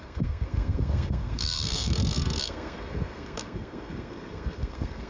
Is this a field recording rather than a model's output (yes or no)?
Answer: no